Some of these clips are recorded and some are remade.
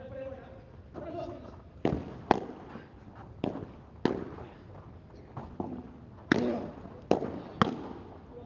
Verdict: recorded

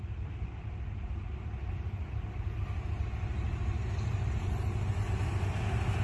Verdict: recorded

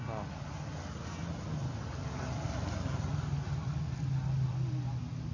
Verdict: recorded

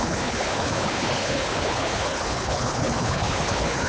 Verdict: remade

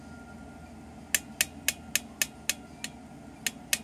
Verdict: recorded